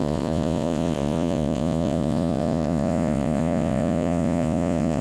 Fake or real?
fake